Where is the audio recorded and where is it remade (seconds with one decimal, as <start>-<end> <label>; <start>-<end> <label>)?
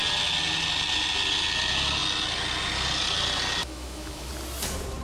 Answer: 0.0-3.6 recorded; 3.6-4.3 remade; 4.3-5.0 recorded